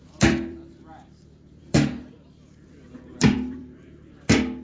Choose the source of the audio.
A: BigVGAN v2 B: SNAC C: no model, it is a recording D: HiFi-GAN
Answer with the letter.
A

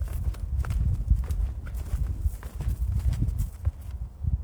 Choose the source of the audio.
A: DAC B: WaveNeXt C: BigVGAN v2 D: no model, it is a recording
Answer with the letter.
C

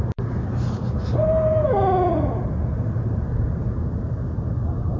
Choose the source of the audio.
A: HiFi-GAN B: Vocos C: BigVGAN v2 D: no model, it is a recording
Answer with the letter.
D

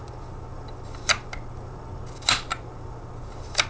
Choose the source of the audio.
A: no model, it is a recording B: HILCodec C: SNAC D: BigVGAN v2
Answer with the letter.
D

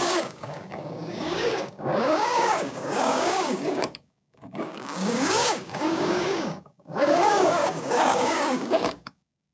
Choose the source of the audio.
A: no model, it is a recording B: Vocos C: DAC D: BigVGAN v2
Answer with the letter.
C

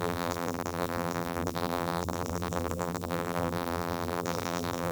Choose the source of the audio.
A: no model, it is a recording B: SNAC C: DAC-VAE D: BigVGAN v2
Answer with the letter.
D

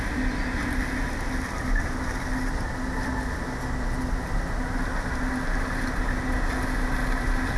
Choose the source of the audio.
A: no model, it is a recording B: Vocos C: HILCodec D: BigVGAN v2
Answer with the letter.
A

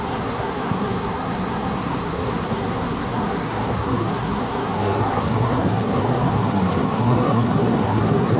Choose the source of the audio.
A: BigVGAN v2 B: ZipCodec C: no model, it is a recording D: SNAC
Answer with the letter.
D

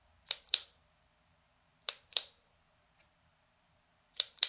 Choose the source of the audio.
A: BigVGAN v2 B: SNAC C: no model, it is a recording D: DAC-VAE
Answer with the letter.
A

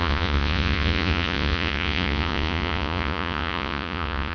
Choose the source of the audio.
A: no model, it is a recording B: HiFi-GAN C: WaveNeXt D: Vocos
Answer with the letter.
D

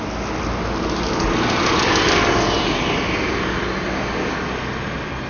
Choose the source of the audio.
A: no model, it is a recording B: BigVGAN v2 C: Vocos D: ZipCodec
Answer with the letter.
A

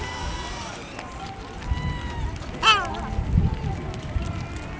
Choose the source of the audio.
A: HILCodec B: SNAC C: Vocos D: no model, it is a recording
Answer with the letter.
D